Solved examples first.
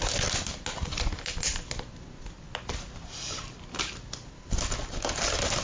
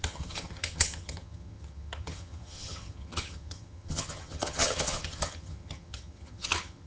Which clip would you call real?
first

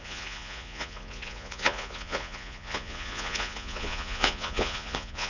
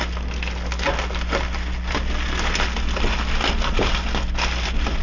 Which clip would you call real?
second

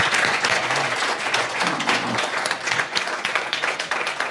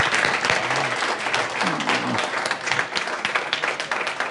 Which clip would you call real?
second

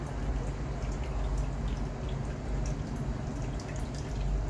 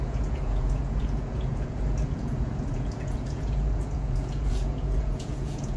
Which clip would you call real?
first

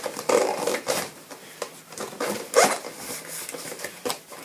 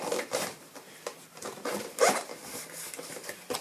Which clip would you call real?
first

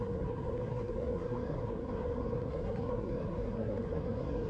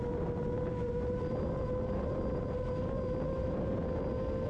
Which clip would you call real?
second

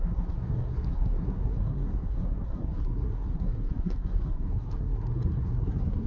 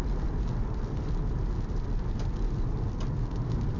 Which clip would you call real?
second